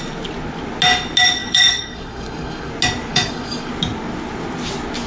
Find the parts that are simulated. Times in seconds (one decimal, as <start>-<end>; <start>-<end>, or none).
1.4-2.7; 3.1-3.7